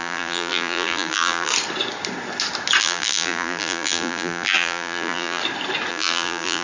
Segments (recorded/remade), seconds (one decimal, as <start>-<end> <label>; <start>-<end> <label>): 0.0-1.5 remade; 1.5-2.8 recorded; 2.8-5.4 remade; 5.4-5.9 recorded; 5.9-6.6 remade